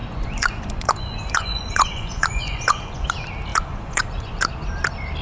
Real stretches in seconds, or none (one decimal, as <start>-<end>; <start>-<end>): 3.1-3.5; 4.4-5.2